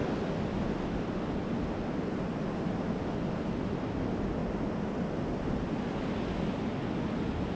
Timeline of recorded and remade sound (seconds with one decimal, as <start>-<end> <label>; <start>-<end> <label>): 0.0-7.6 recorded